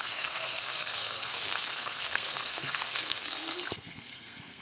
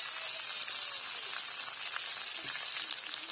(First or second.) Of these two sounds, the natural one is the second